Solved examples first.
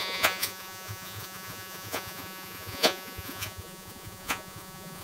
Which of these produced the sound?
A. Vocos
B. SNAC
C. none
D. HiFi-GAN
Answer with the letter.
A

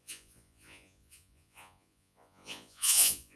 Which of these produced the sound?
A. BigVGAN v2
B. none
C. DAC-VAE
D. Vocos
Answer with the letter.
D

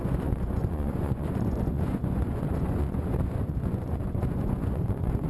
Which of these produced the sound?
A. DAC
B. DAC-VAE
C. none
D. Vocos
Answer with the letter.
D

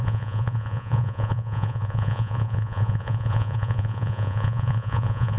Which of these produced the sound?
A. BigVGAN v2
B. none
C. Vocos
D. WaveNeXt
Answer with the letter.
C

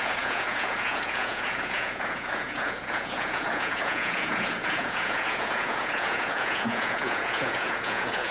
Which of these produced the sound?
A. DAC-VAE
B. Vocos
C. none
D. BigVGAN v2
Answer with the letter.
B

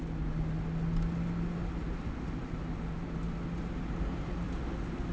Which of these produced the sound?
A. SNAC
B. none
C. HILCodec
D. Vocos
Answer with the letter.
B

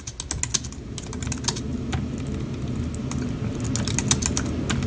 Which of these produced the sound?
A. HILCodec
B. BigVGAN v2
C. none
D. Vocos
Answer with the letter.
C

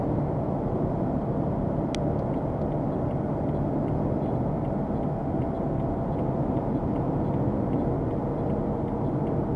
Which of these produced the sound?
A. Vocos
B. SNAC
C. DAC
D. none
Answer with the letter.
D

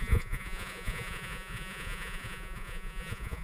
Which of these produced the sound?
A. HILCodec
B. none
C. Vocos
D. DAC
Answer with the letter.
C